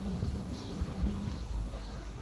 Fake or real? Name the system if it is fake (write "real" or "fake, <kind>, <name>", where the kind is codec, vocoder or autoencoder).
fake, codec, SNAC